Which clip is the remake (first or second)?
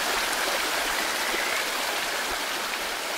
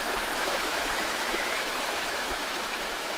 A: second